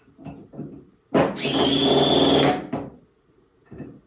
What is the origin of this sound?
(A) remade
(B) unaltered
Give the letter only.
B